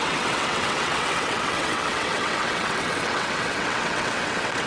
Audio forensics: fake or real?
fake